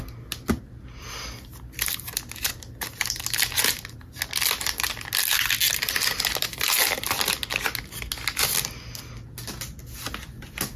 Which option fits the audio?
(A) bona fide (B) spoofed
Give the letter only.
A